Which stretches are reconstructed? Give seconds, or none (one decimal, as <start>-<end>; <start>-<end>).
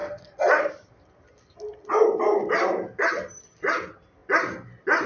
0.0-0.7; 2.0-3.8